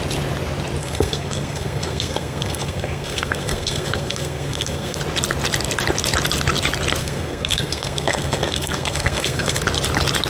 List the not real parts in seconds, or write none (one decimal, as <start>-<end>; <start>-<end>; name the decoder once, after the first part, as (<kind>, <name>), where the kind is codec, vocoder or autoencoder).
0.8-5.0 (codec, SNAC); 7.0-9.6

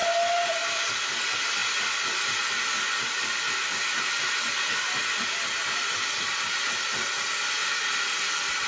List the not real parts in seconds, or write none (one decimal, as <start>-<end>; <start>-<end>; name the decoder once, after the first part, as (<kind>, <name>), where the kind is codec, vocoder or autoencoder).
none

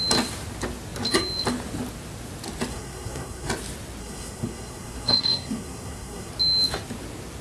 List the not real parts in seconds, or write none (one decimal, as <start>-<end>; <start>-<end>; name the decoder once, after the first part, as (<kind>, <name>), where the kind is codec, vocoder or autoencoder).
2.7-3.5 (codec, SNAC); 4.0-6.3

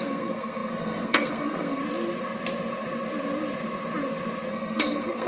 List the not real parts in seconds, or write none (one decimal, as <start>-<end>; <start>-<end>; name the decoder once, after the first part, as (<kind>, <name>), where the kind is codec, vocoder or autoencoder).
0.0-1.8 (codec, SNAC); 4.5-5.3

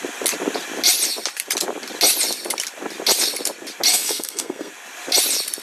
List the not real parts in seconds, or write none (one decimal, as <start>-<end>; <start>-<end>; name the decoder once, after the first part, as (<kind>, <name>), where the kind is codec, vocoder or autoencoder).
3.9-4.7 (codec, SNAC)

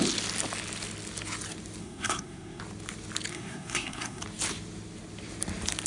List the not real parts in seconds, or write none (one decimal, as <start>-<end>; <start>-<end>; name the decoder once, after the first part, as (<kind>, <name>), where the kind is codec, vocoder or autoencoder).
1.8-2.6 (codec, SNAC); 3.3-4.2